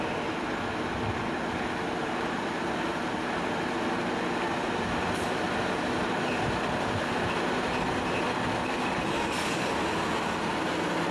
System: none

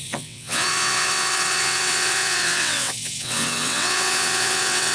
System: vocoder, WaveNeXt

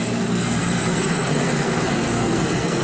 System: codec, SNAC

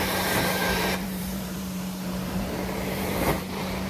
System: vocoder, BigVGAN v2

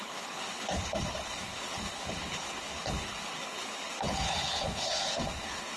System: codec, HILCodec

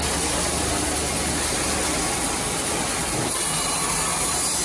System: none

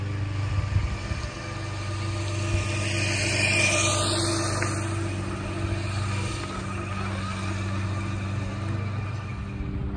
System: none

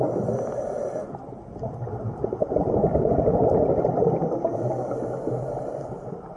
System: none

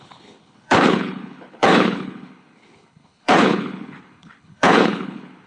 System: codec, HILCodec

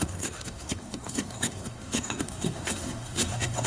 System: codec, SNAC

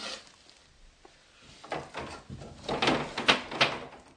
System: none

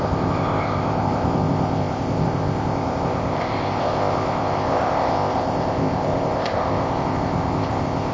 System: codec, ZipCodec